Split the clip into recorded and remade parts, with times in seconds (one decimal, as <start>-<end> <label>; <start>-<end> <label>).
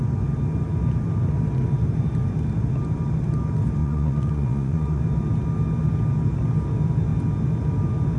0.0-3.8 recorded; 3.8-5.0 remade; 5.0-8.2 recorded